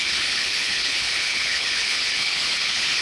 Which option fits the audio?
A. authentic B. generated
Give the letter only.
B